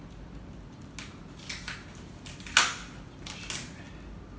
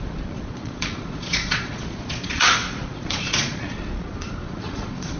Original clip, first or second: first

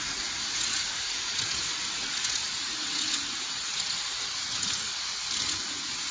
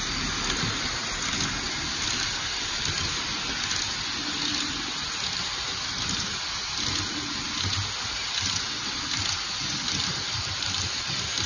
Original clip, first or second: second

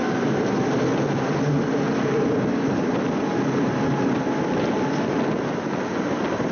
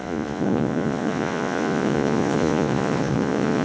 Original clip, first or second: first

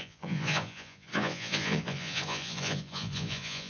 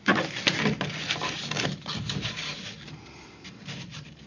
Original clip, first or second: second